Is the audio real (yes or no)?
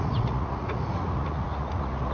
no